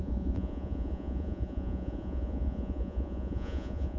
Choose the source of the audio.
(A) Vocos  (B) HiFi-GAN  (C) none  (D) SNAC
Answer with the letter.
A